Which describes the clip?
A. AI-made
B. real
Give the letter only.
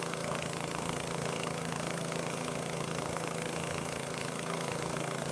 A